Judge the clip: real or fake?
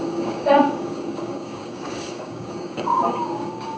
fake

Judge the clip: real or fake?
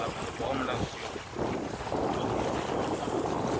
real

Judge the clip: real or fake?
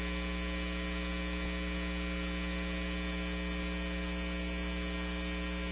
real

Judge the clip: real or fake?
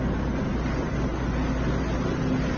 real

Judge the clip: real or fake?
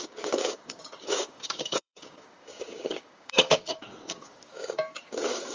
fake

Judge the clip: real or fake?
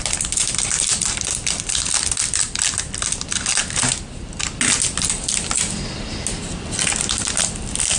real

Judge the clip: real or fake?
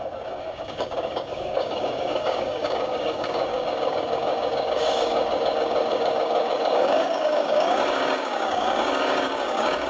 fake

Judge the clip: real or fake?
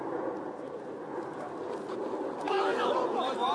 real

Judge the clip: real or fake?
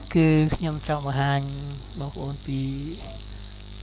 fake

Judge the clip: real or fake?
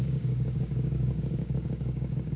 fake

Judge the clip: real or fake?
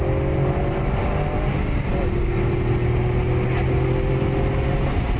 real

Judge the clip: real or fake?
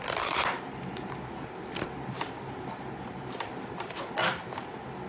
real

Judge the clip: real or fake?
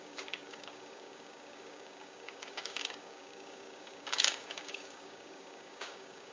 fake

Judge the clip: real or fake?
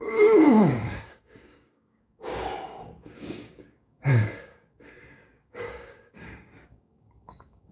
fake